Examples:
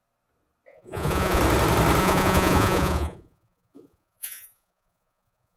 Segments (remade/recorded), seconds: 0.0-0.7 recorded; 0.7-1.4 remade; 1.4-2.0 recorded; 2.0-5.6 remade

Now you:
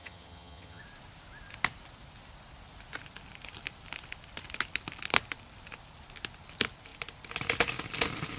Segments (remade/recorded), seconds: 0.0-0.8 remade; 0.8-8.4 recorded